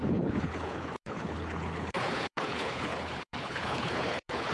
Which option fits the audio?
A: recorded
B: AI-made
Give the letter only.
B